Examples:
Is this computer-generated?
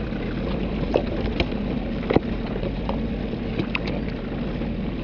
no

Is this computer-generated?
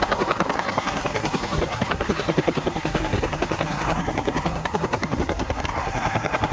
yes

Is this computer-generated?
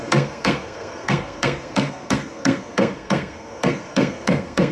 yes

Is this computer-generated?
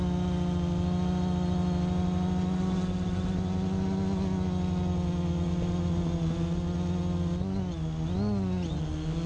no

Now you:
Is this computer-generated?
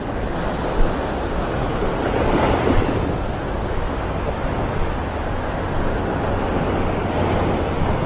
no